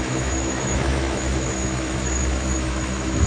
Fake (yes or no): yes